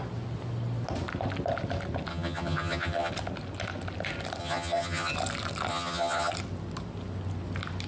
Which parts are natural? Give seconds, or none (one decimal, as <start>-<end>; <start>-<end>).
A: 0.0-2.1; 3.1-4.4; 5.1-5.7; 6.3-7.9